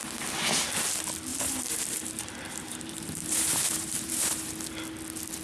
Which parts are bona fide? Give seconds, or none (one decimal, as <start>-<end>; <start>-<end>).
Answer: 0.0-1.3; 4.5-5.4

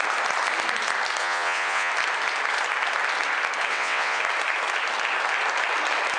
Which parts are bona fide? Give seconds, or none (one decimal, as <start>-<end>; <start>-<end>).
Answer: 0.0-1.2; 1.9-3.7; 4.2-6.2

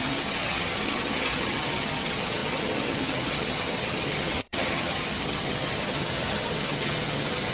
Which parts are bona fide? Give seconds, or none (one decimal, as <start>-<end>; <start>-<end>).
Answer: none

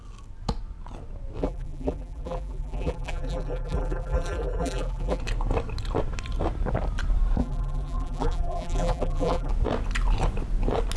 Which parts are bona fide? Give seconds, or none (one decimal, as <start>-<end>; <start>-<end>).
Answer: 0.0-1.4; 5.2-7.4; 9.5-11.0

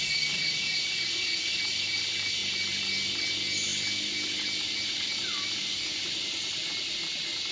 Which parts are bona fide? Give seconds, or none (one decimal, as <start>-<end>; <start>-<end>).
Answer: 0.0-7.5

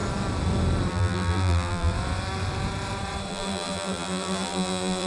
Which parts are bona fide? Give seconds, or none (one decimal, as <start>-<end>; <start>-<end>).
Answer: 0.0-0.9; 1.9-3.3

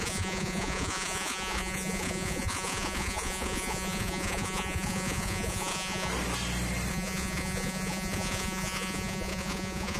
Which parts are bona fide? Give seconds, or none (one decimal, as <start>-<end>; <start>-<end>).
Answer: 6.1-6.9